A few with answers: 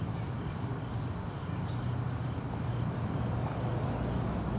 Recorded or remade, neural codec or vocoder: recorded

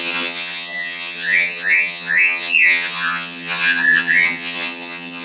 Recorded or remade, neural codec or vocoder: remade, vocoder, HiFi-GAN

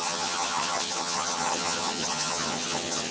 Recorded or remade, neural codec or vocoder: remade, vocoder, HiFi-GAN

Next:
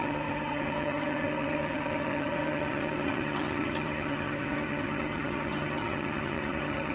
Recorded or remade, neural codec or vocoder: remade, vocoder, HiFi-GAN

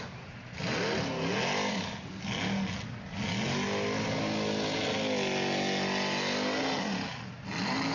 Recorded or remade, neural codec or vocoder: recorded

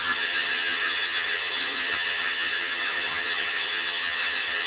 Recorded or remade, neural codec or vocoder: remade, vocoder, HiFi-GAN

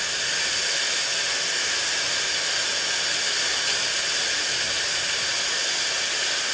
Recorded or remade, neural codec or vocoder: recorded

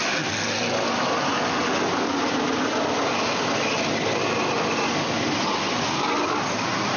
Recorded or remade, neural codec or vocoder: recorded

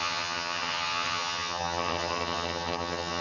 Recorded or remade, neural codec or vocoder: remade, vocoder, HiFi-GAN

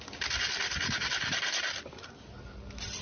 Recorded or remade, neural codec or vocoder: recorded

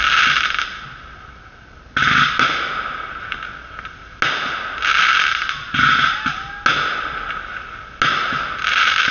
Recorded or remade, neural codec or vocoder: recorded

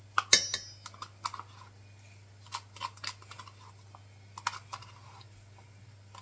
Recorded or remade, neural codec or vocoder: recorded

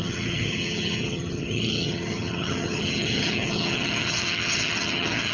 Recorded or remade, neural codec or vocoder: remade, vocoder, HiFi-GAN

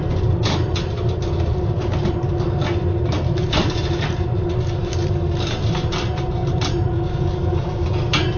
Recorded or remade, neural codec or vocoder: recorded